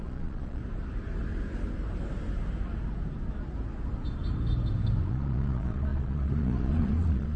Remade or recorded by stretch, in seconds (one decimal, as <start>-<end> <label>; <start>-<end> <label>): 0.0-0.6 remade; 0.6-5.0 recorded; 5.0-7.4 remade